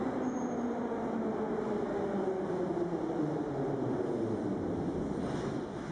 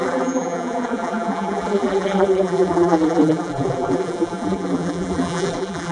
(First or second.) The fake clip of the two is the second